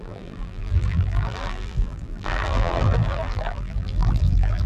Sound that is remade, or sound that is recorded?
remade